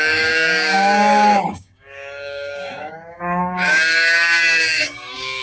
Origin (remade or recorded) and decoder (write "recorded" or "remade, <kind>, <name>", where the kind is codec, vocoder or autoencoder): remade, codec, DAC